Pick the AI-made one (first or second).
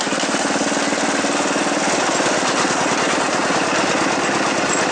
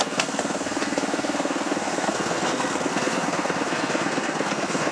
second